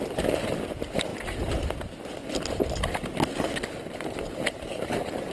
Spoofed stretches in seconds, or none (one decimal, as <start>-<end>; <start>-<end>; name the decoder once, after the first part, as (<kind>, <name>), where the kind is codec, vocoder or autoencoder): none